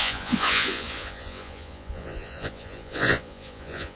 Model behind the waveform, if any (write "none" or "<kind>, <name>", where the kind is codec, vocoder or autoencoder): vocoder, Vocos